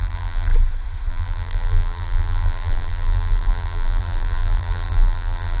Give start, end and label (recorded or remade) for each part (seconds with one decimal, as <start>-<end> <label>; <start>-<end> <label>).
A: 0.0-0.5 remade; 0.5-1.1 recorded; 1.1-5.6 remade